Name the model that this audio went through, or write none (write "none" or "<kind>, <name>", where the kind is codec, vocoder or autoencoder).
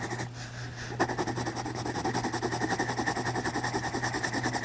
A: none